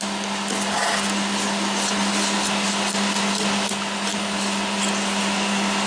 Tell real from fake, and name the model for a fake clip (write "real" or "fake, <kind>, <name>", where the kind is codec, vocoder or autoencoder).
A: real